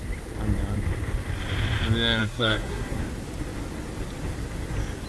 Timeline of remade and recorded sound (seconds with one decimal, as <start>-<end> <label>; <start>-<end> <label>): 0.0-2.2 recorded; 2.2-3.0 remade; 3.0-5.1 recorded